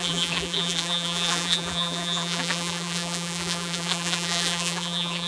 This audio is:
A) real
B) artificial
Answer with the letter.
B